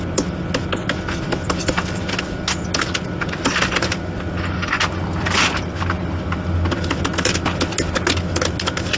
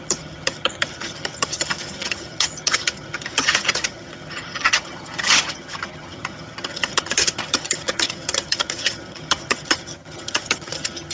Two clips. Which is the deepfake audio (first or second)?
second